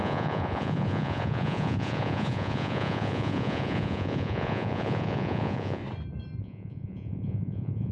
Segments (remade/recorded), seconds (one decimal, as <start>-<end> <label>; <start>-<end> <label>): 0.0-5.8 remade; 5.8-6.4 recorded; 6.4-7.9 remade